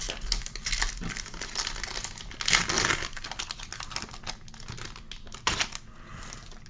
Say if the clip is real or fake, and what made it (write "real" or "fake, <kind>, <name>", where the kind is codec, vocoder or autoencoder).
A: real